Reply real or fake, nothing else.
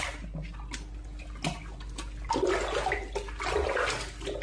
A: real